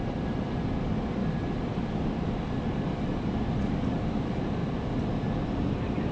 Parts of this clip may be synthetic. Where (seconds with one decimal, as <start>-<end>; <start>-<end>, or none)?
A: 1.2-3.5